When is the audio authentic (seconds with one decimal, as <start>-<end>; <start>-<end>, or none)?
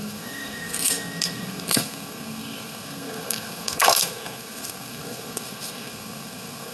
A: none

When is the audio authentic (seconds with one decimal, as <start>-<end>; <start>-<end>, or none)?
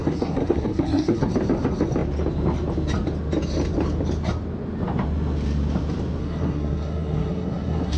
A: 1.3-6.2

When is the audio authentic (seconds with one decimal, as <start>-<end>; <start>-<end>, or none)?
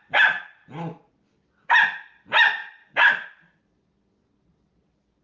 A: 0.0-5.2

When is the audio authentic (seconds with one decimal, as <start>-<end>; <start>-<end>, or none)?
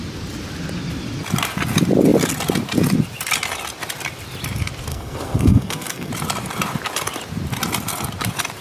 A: 0.0-4.9; 6.1-8.6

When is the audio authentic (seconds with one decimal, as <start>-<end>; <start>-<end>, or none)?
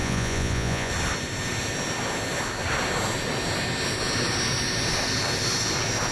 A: 0.9-6.1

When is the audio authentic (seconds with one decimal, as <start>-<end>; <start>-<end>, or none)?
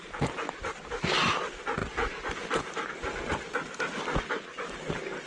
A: 0.0-5.3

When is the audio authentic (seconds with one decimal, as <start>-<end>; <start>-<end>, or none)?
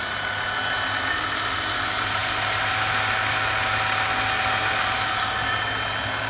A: 0.0-6.3